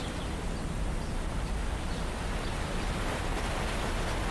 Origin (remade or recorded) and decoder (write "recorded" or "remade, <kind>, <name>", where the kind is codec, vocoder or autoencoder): recorded